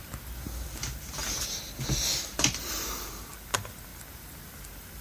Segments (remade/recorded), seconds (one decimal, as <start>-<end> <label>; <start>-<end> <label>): 0.0-2.3 recorded; 2.3-3.3 remade; 3.3-5.0 recorded